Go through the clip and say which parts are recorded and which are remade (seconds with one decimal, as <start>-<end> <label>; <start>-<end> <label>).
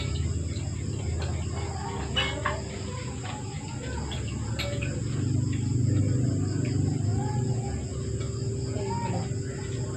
0.0-10.0 recorded